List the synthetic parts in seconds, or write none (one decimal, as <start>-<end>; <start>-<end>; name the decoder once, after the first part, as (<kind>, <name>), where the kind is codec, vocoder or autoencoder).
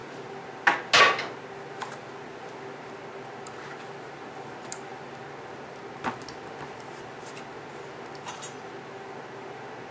none